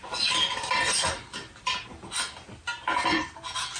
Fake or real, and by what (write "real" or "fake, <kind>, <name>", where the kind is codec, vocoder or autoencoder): real